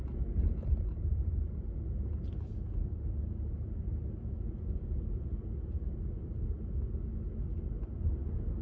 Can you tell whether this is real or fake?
real